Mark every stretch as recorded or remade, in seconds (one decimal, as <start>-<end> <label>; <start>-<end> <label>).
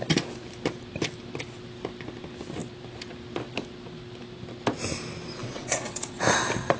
0.0-5.4 recorded; 5.4-6.2 remade; 6.2-6.8 recorded